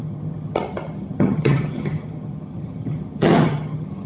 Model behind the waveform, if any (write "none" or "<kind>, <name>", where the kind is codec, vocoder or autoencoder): vocoder, HiFi-GAN